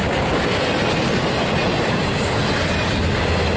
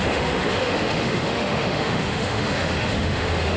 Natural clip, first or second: first